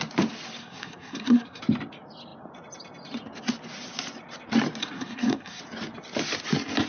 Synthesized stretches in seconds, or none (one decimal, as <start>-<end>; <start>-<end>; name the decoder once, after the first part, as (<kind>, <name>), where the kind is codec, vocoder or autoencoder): 0.6-1.6 (codec, SNAC); 4.8-5.6